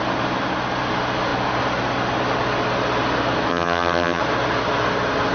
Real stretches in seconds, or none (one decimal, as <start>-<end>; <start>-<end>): 0.0-3.5; 4.2-5.3